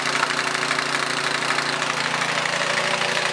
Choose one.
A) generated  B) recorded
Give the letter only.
B